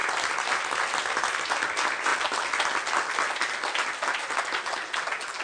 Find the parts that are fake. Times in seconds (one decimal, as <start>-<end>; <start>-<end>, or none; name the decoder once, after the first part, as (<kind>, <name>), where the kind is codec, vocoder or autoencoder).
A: none